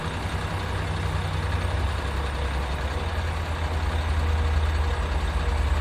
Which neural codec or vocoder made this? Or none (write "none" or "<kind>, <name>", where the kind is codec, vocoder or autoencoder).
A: none